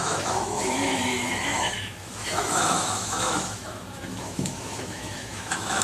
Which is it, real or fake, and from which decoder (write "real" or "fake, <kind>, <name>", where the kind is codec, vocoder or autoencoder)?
fake, autoencoder, DAC-VAE